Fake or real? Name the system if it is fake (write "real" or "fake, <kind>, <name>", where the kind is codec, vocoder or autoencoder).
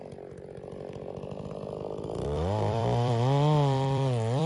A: fake, vocoder, BigVGAN v2